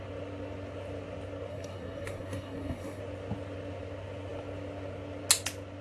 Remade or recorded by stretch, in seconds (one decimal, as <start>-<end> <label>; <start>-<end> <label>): 0.0-1.5 recorded; 1.5-3.0 remade; 3.0-5.8 recorded